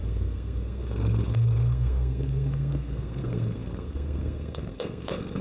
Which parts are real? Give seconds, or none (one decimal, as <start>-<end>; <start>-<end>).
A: none